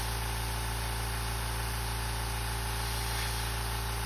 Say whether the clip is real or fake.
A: real